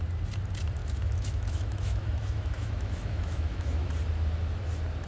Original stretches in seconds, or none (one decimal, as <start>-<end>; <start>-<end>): 0.0-0.8; 3.9-5.1